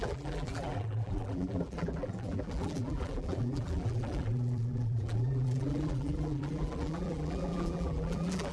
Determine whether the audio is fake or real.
fake